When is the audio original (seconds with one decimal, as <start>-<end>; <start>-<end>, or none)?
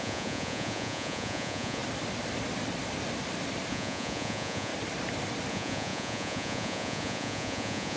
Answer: 1.8-3.7; 4.7-5.5